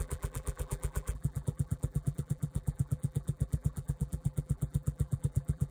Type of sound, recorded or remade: remade